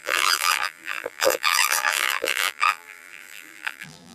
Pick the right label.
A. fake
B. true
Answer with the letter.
A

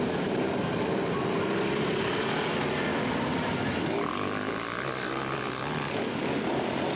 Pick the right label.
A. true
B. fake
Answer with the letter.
A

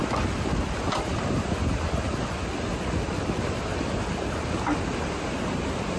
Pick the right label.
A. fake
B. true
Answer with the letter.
B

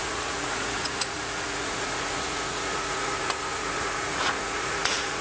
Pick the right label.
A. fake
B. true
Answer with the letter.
A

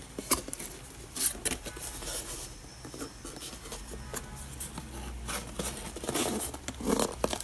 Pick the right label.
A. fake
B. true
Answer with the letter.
B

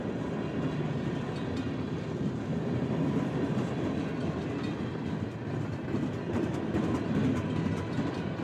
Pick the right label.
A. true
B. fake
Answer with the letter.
A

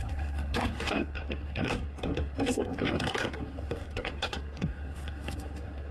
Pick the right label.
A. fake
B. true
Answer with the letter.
A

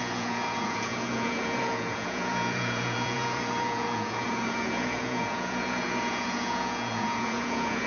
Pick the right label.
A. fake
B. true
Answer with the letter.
A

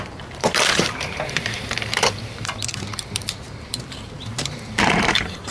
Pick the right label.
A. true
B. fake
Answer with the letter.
B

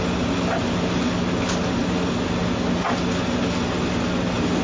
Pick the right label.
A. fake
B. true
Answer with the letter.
B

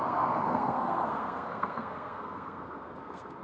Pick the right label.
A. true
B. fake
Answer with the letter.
B